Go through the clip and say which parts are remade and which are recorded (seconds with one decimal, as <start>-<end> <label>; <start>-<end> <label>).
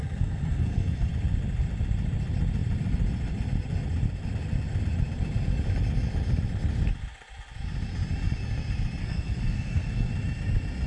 0.0-1.1 remade; 1.1-9.0 recorded; 9.0-10.1 remade; 10.1-10.9 recorded